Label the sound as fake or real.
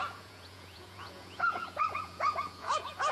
fake